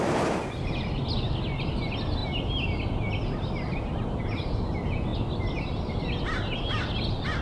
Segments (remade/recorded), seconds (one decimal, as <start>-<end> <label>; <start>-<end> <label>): 0.0-7.4 recorded